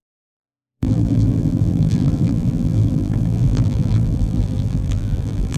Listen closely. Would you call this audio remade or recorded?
remade